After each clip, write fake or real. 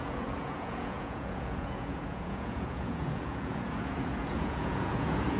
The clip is fake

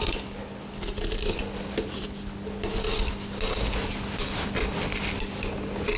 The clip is real